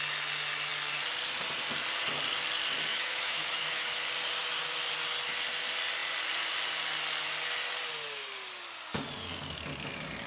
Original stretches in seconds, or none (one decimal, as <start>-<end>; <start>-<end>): 0.0-2.9; 4.0-10.3